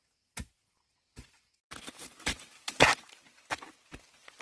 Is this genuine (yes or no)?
yes